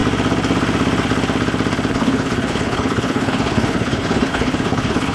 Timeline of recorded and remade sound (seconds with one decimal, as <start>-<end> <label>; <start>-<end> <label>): 0.0-1.9 recorded; 1.9-5.1 remade